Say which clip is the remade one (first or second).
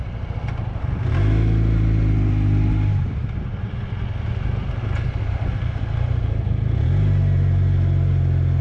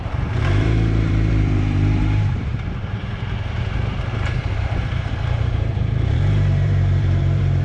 second